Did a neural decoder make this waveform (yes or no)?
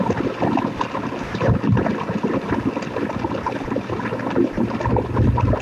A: no